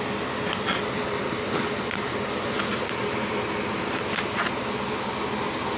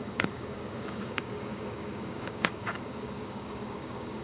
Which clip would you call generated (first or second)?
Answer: second